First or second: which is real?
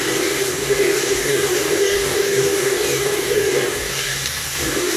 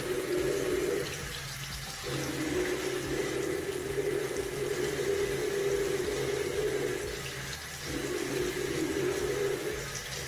second